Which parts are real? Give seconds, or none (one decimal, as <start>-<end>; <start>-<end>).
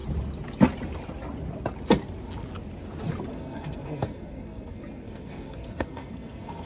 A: 0.0-3.3